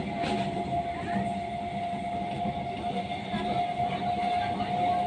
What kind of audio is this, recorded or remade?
recorded